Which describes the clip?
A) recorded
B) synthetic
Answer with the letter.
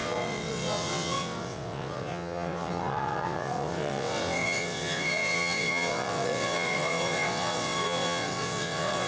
B